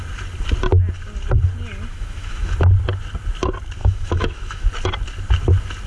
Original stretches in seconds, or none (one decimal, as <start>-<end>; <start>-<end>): 0.0-1.9; 2.5-3.8; 4.7-5.9